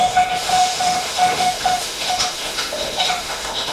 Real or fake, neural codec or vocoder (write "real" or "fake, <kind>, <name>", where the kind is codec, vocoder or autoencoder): fake, autoencoder, DAC-VAE